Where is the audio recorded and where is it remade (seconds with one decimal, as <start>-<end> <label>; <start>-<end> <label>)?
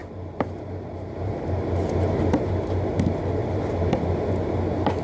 0.0-2.5 remade; 2.5-3.4 recorded; 3.4-4.3 remade; 4.3-5.0 recorded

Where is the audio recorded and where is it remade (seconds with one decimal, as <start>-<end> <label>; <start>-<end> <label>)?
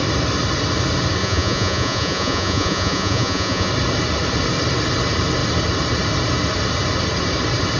0.0-1.2 recorded; 1.2-3.7 remade; 3.7-7.8 recorded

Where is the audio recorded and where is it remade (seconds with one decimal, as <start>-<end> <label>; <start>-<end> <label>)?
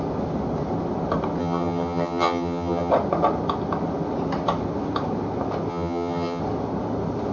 0.0-1.4 recorded; 1.4-2.9 remade; 2.9-5.7 recorded; 5.7-6.4 remade; 6.4-7.3 recorded